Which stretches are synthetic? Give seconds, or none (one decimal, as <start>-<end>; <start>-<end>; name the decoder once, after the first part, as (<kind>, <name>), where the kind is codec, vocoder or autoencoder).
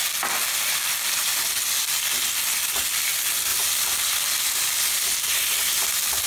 3.5-6.3 (vocoder, BigVGAN v2)